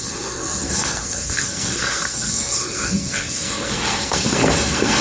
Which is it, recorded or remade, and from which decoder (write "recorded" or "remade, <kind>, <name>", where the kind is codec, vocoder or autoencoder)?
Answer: remade, codec, SNAC